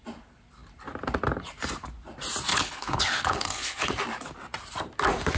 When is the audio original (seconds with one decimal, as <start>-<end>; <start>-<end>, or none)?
0.0-2.5; 3.9-5.4